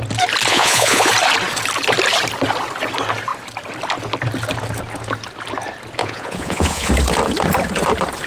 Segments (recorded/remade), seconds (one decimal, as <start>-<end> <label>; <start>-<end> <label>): 0.0-0.5 recorded; 0.5-1.1 remade; 1.1-6.0 recorded; 6.0-6.9 remade; 6.9-8.3 recorded